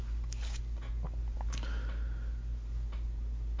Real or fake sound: real